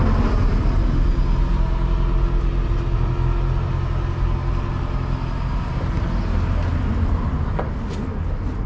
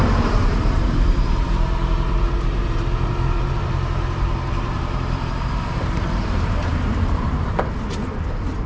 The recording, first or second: first